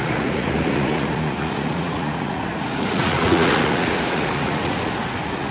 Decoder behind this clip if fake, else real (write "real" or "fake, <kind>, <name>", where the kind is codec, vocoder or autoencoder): fake, vocoder, Vocos